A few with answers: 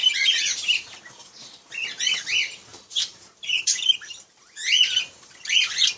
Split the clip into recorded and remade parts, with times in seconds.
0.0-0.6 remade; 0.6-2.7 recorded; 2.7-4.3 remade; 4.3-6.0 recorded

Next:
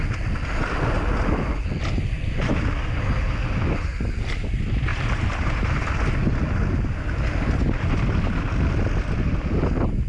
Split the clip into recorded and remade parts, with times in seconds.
0.0-4.9 recorded; 4.9-5.6 remade; 5.6-10.1 recorded

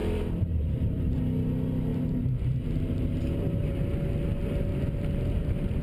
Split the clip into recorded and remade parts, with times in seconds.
0.0-1.2 remade; 1.2-1.9 recorded; 1.9-3.8 remade; 3.8-4.7 recorded; 4.7-5.8 remade

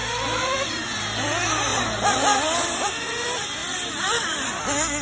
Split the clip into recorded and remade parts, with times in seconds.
0.0-1.0 remade; 1.0-1.7 recorded; 1.7-2.9 remade; 2.9-3.6 recorded; 3.6-4.6 remade; 4.6-5.0 recorded

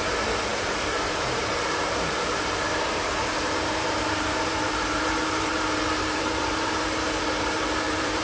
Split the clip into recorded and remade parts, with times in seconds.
0.0-8.2 remade